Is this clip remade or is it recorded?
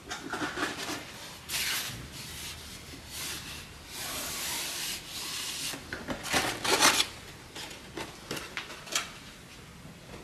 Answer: recorded